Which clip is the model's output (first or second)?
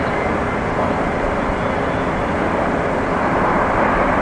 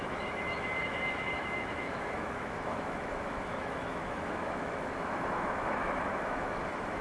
second